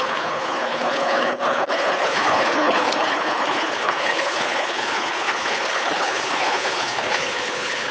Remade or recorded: remade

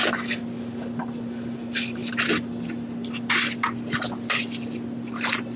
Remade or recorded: recorded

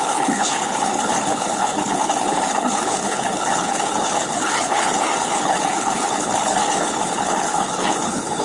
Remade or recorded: remade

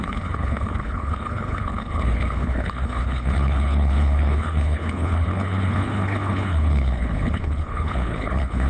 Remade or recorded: remade